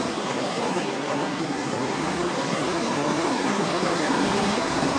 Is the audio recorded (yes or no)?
no